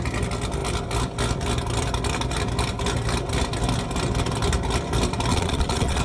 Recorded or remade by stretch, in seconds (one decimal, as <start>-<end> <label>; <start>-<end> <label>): 0.0-5.3 recorded; 5.3-6.0 remade